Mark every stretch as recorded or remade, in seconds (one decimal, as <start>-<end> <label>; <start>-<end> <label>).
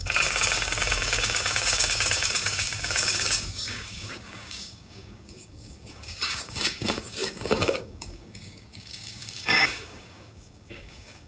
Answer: 0.0-11.3 remade